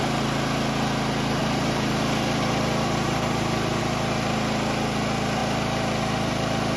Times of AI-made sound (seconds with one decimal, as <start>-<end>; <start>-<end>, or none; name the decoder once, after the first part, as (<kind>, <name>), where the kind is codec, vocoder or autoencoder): 1.4-3.8 (vocoder, BigVGAN v2)